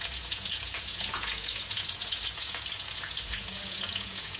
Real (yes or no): no